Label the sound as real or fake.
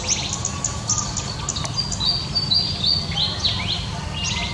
real